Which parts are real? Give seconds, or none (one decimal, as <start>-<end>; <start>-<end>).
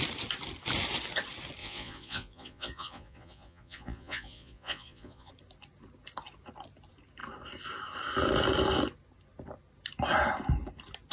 0.0-1.6; 5.3-11.1